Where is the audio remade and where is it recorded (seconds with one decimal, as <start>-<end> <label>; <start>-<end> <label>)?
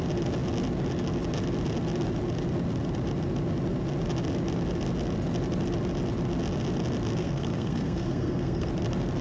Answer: 0.0-7.2 recorded; 7.2-8.7 remade; 8.7-9.2 recorded